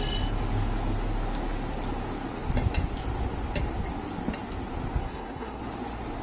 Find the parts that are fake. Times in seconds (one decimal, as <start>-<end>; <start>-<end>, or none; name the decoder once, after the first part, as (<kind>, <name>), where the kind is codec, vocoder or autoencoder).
5.0-5.6 (codec, SNAC)